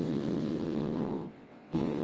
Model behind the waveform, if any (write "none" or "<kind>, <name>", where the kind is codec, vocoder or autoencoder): vocoder, WaveNeXt